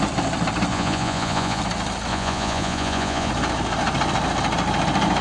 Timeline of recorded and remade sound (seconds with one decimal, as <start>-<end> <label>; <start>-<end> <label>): 0.0-0.7 recorded; 0.7-1.6 remade; 1.6-2.1 recorded; 2.1-3.3 remade; 3.3-5.2 recorded